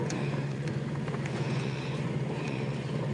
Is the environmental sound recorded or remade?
remade